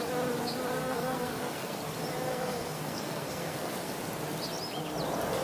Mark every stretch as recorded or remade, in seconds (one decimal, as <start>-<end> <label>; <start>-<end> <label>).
0.0-0.8 recorded; 0.8-1.8 remade; 1.8-2.3 recorded; 2.3-3.9 remade; 3.9-5.4 recorded